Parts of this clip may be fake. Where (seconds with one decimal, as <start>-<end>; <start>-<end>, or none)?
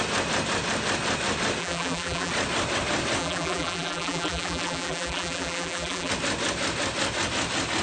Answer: 1.6-2.3; 3.2-6.1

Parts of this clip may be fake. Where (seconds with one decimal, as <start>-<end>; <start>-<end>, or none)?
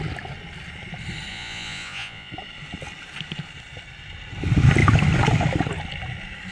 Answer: 1.3-2.3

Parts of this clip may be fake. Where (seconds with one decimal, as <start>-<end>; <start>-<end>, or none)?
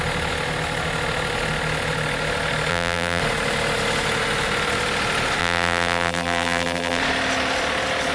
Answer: 2.7-3.2; 5.4-7.0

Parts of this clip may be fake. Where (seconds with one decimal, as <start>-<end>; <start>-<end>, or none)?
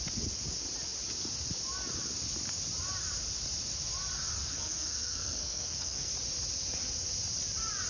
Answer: 4.4-6.1